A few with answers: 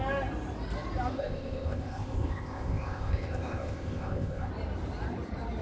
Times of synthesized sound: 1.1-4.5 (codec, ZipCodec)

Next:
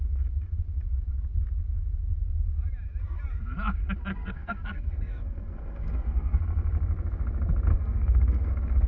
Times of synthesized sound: 4.1-6.4 (codec, SNAC); 7.7-8.5

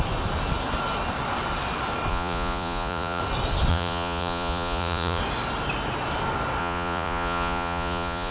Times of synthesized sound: 2.1-3.2 (vocoder, Vocos); 3.7-5.2; 6.6-8.3

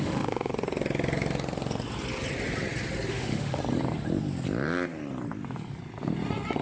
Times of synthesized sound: 0.0-0.5 (autoencoder, DAC-VAE); 3.1-3.6

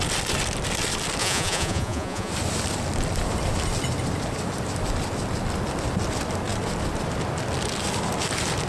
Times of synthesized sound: 1.2-2.3 (vocoder, Vocos)

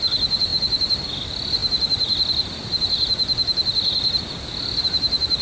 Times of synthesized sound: none